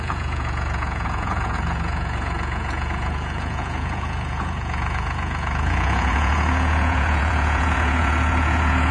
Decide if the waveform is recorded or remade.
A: remade